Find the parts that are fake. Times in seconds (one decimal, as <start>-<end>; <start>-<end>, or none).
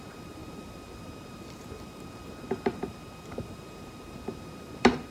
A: 0.0-5.1